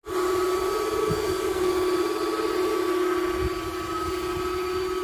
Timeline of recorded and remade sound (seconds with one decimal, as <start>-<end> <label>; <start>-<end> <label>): 0.0-1.0 recorded; 1.0-1.7 remade; 1.7-5.0 recorded

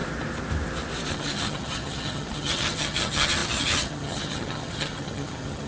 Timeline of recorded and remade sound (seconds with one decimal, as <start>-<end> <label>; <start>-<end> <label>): 0.0-1.1 recorded; 1.1-5.7 remade